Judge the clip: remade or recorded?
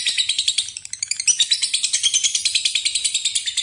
recorded